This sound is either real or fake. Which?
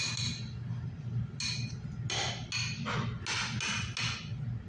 real